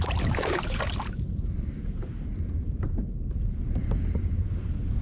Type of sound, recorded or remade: remade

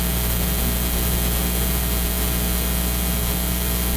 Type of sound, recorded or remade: recorded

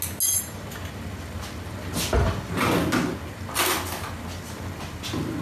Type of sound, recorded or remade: recorded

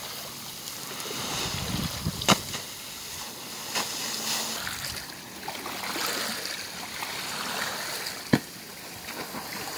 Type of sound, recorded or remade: recorded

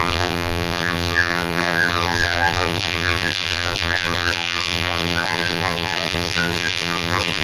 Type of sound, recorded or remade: remade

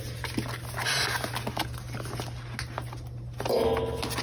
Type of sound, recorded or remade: recorded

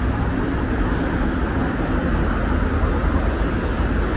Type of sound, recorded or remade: recorded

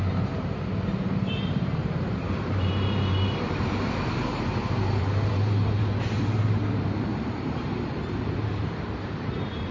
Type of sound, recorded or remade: remade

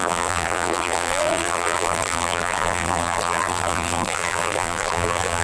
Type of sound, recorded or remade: remade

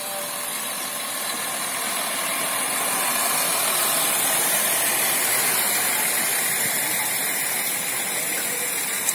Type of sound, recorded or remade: remade